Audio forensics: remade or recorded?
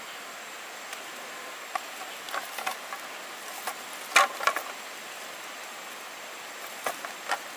recorded